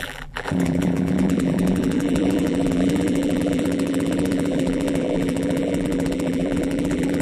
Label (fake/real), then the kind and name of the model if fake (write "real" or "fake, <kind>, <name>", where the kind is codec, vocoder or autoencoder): fake, vocoder, BigVGAN v2